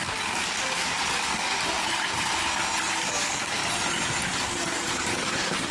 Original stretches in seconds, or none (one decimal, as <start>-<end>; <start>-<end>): 1.5-2.9; 3.6-4.4